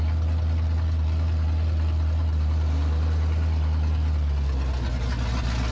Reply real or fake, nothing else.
real